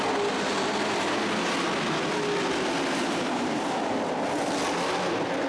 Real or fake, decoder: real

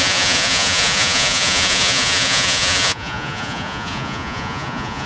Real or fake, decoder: fake, vocoder, Vocos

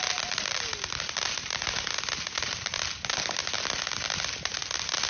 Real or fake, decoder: real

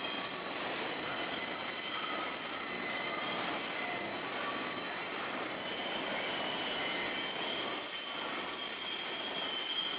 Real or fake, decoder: real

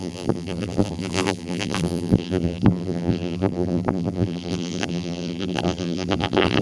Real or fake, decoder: fake, vocoder, BigVGAN v2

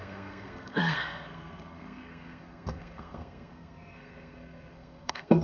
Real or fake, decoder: fake, codec, SNAC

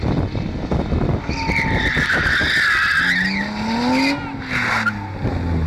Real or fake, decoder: real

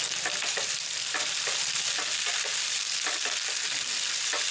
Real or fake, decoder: real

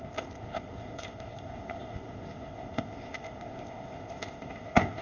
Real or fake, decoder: fake, codec, ZipCodec